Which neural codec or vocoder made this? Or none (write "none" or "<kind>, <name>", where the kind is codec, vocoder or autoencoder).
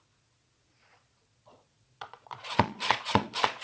vocoder, Vocos